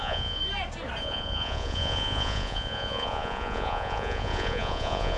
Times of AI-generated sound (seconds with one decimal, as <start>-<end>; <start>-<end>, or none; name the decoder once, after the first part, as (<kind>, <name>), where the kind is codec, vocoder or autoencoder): 0.0-0.4 (vocoder, Vocos); 1.0-5.2